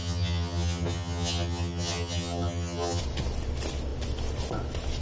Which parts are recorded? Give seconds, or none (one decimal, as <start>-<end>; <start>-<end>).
3.0-5.0